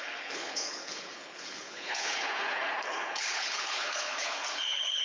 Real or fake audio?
fake